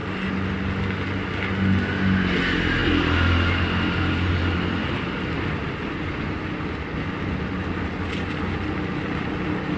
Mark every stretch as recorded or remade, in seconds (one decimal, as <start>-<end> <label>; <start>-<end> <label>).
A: 0.0-0.8 remade; 0.8-2.8 recorded; 2.8-7.8 remade; 7.8-9.8 recorded